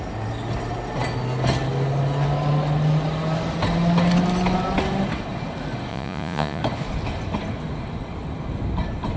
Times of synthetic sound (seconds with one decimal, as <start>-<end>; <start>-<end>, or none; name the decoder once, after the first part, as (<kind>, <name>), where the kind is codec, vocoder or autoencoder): 5.9-6.6 (vocoder, Vocos)